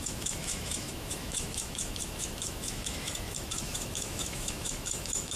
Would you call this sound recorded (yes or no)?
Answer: no